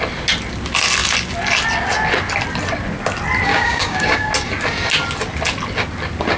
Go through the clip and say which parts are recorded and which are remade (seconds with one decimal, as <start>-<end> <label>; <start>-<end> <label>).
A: 0.0-3.5 recorded; 3.5-4.3 remade; 4.3-6.4 recorded